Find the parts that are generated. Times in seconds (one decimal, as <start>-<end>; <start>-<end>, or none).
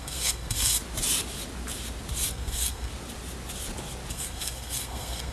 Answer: 0.0-0.8; 2.3-2.9; 4.1-5.3